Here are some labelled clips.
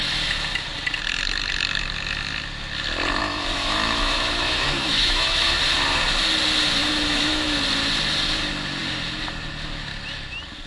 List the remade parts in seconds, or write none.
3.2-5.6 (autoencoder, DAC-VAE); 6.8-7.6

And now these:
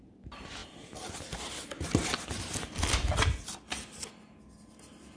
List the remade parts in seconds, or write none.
none

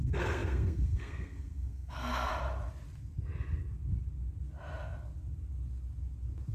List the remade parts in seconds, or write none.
0.0-2.3 (codec, SNAC)

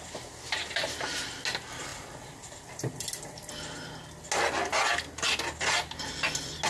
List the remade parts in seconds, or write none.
1.9-3.5 (vocoder, BigVGAN v2)

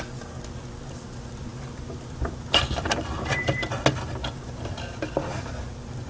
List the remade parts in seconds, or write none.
1.5-3.8 (vocoder, BigVGAN v2)

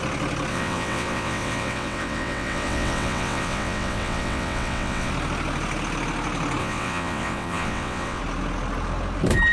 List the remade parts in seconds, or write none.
0.5-5.1 (vocoder, WaveNeXt); 6.6-8.2

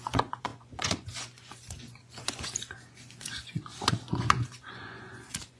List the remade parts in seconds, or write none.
0.0-5.6 (vocoder, Vocos)